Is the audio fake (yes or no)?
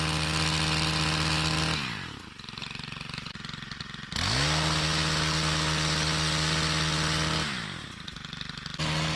no